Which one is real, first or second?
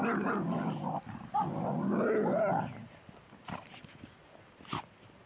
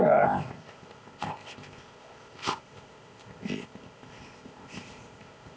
first